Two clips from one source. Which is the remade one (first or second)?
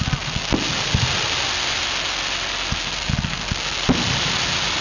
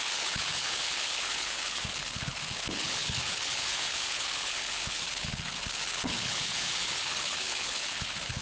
second